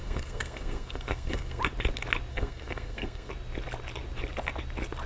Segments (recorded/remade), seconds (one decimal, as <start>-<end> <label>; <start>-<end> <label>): 0.0-1.6 remade; 1.6-2.3 recorded; 2.3-3.3 remade; 3.3-5.1 recorded